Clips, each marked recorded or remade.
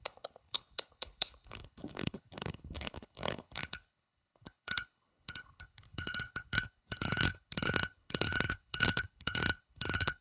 remade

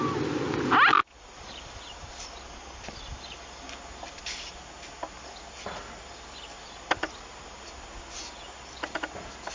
recorded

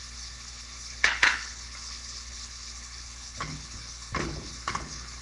remade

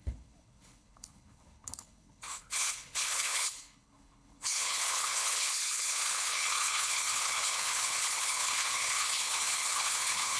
remade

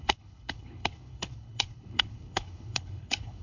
remade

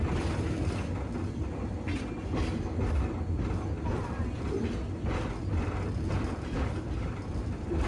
recorded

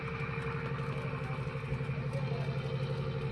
recorded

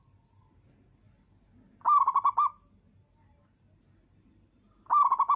recorded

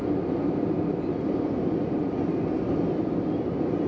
recorded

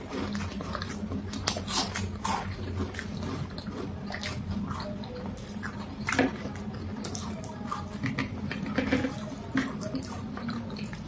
recorded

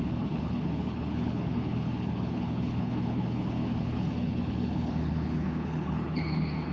remade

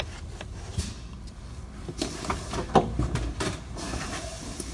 recorded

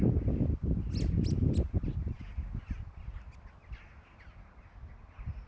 recorded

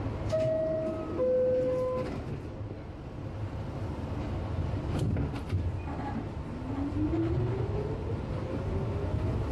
recorded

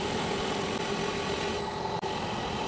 recorded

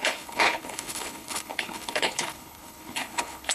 remade